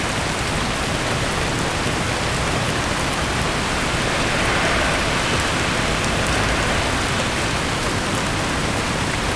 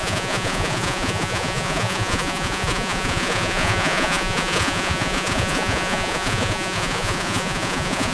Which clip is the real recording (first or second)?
first